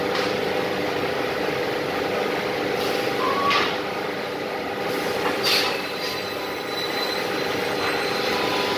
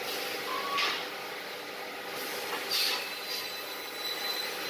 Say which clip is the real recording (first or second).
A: second